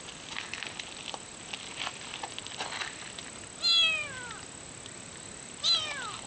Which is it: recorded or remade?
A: recorded